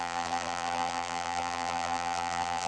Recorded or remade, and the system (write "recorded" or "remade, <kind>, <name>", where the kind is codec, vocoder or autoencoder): remade, vocoder, BigVGAN v2